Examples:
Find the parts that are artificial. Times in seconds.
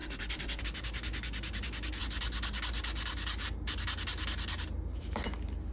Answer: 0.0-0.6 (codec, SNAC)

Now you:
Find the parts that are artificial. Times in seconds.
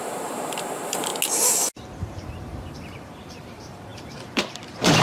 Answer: 0.0-1.1 (vocoder, BigVGAN v2); 2.0-5.0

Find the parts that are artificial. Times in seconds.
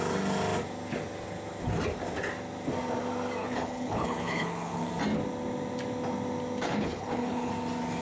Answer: 3.4-4.9 (codec, HILCodec); 6.6-7.5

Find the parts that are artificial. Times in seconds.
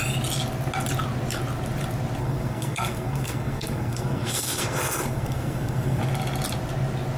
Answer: 2.2-6.0 (codec, SNAC)